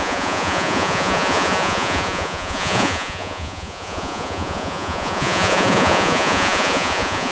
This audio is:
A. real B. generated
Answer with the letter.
B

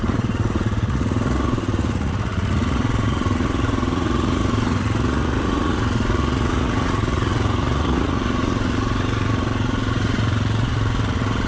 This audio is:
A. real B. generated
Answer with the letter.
B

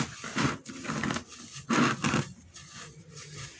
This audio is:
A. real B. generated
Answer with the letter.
A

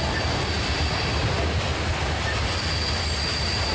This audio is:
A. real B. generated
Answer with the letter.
A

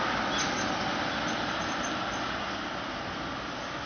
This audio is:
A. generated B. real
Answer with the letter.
B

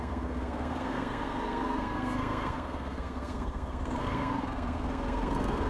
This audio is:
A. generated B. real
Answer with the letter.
A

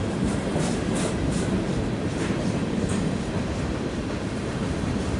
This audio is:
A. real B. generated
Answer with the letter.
B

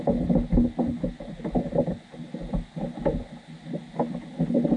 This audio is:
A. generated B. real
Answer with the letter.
B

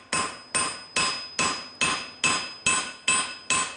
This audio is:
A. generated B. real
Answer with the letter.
B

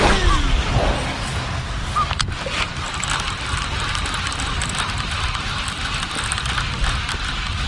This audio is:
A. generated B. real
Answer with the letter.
B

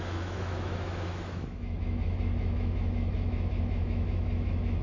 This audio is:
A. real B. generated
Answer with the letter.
B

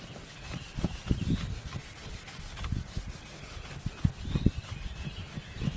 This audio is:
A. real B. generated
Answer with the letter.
A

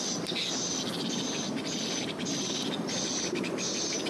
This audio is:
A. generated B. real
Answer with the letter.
B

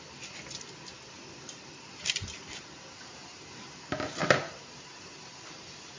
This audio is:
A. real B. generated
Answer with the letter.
A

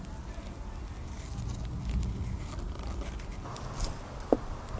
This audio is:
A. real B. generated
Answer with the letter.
A